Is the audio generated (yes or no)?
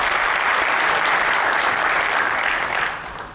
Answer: no